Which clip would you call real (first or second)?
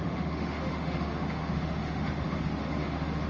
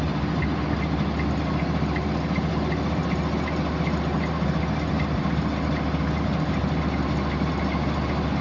second